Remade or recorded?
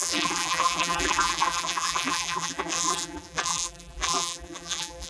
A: remade